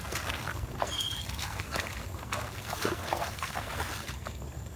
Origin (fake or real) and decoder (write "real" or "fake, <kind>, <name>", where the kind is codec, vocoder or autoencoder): fake, codec, SNAC